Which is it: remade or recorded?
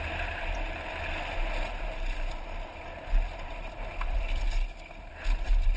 recorded